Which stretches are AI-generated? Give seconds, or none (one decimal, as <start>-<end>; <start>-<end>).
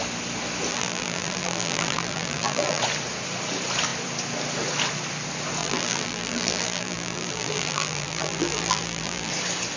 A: 0.7-2.8; 5.6-9.3